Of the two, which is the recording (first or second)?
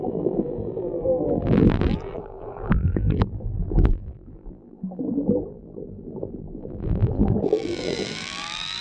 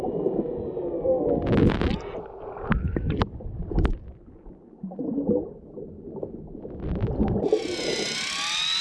second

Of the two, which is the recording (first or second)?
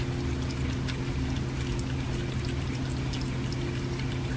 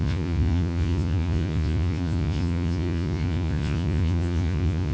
first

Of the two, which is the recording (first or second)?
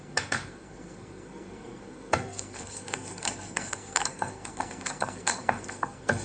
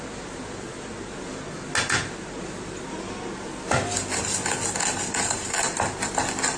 second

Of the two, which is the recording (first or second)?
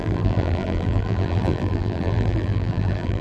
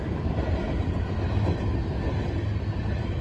second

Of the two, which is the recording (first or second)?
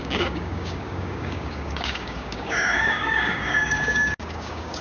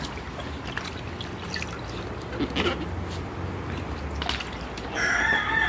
second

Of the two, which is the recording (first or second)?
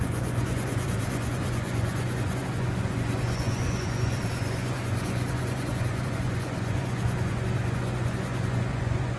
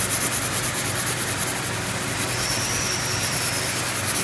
second